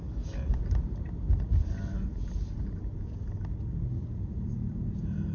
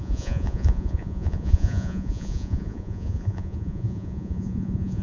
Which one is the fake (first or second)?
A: second